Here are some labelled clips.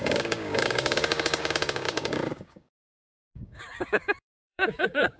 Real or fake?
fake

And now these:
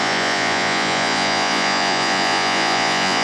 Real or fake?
fake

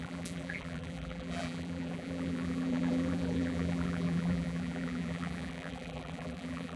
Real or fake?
fake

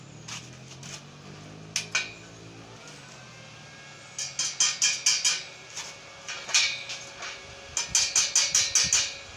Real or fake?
real